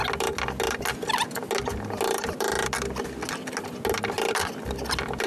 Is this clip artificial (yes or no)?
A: no